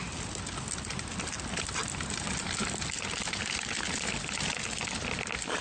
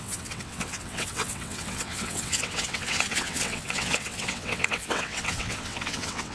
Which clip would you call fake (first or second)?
second